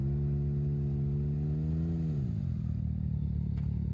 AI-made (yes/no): no